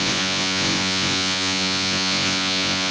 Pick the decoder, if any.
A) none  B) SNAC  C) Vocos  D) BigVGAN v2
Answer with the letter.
C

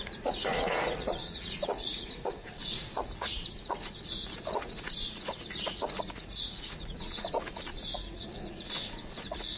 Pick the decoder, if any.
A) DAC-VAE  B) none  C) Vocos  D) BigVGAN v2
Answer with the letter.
C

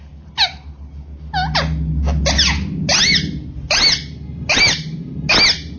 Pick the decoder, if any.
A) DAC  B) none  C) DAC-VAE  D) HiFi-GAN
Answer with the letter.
B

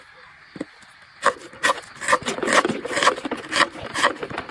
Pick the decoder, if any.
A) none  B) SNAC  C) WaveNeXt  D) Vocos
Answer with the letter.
A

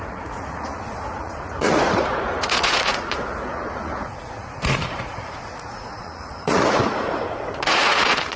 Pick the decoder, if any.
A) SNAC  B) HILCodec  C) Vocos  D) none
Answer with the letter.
C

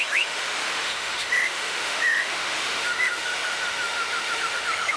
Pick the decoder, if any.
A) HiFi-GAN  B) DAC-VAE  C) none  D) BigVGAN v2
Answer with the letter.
B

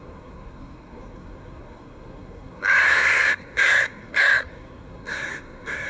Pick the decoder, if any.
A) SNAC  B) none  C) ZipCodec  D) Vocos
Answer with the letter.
A